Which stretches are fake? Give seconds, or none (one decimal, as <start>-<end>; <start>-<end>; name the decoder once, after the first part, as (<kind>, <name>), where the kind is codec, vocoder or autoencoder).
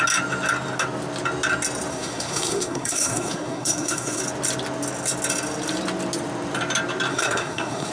1.9-4.2 (codec, SNAC); 7.1-7.9